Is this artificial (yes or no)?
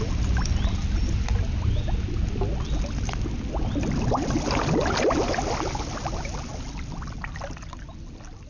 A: no